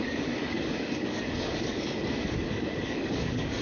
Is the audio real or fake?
fake